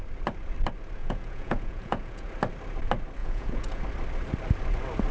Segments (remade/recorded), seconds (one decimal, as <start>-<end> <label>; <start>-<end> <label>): 0.0-1.0 recorded; 1.0-2.3 remade; 2.3-3.2 recorded; 3.2-3.8 remade; 3.8-5.1 recorded